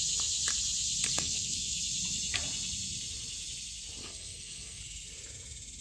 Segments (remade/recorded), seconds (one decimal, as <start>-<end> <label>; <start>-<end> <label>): 0.0-1.1 recorded; 1.1-1.8 remade; 1.8-4.0 recorded; 4.0-4.8 remade; 4.8-5.8 recorded